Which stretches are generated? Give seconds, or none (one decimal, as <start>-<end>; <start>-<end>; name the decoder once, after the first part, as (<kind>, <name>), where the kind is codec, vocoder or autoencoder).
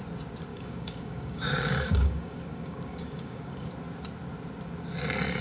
0.5-3.7 (codec, DAC)